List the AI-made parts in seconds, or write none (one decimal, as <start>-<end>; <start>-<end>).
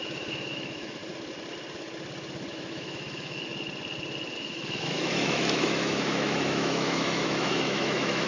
0.0-1.0; 2.5-3.5; 4.4-8.3